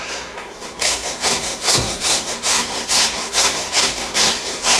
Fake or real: fake